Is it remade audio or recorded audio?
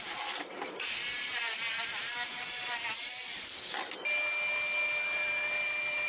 recorded